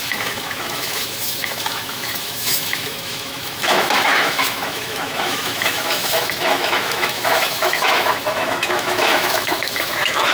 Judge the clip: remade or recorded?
remade